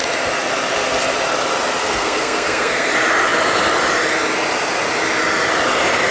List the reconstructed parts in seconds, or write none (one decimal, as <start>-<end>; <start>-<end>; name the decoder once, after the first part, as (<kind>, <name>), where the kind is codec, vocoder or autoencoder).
1.8-2.9 (codec, SNAC)